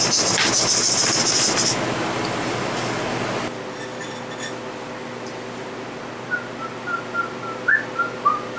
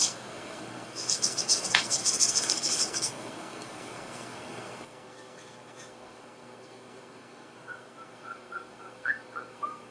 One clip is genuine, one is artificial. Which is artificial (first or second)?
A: second